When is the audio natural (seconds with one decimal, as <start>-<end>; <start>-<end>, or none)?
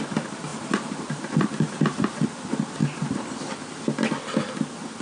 0.0-0.5; 2.0-5.0